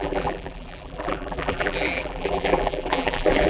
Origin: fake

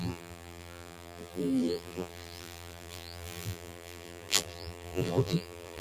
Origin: fake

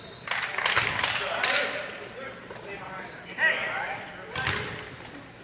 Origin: real